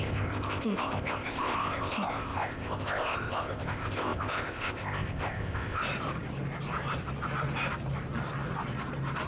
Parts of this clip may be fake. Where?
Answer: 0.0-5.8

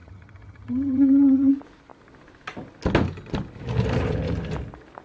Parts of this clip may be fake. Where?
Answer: 0.0-1.5

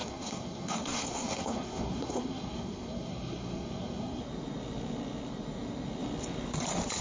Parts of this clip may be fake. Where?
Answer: 0.0-4.2